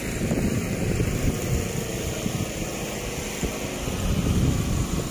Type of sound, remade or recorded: remade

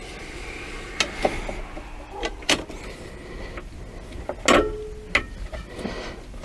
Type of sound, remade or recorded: recorded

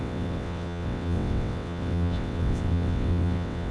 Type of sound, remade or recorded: remade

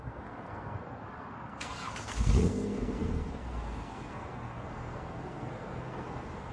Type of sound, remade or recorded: remade